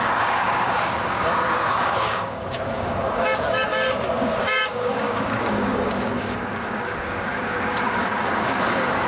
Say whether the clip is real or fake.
fake